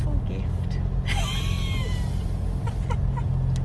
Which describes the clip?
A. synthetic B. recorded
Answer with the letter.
B